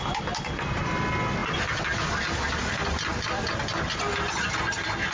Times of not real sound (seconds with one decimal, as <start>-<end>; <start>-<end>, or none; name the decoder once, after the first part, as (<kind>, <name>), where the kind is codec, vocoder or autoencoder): none